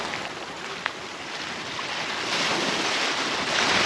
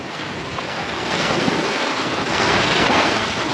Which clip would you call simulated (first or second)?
second